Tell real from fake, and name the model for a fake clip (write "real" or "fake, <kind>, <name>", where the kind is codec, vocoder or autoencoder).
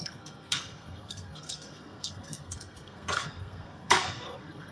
fake, codec, SNAC